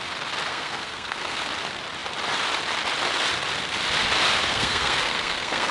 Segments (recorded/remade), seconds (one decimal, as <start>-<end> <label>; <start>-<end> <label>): 0.0-0.5 recorded; 0.5-1.4 remade; 1.4-4.5 recorded; 4.5-5.7 remade